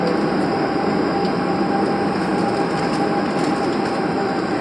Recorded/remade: recorded